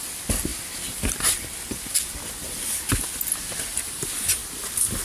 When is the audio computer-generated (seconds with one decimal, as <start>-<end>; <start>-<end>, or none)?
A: none